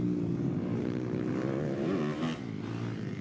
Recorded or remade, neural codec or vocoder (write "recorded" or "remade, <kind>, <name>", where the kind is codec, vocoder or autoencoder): recorded